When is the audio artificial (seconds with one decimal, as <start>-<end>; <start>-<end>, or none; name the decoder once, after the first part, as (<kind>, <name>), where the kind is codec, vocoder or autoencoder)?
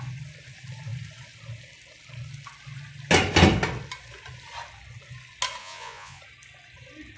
5.6-6.2 (vocoder, Vocos)